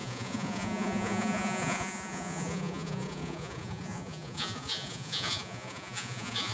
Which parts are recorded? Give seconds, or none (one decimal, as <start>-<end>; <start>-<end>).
none